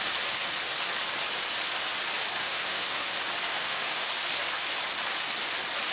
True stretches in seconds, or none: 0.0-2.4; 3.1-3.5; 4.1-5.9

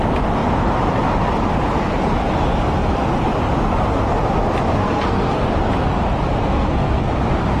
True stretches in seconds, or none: 0.0-4.7; 5.4-6.4; 7.1-7.6

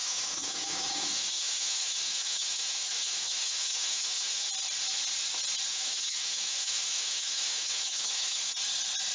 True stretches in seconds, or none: 4.5-5.7; 8.5-9.1